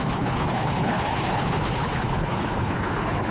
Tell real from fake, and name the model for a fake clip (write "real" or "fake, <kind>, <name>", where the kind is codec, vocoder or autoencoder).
fake, codec, HILCodec